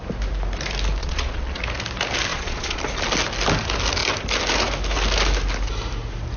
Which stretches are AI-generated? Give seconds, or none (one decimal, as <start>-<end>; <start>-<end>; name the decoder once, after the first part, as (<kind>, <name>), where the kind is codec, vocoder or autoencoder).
1.0-1.6 (vocoder, Vocos); 2.3-2.8